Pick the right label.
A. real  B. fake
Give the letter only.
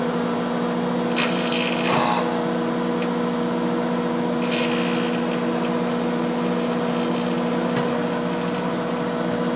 A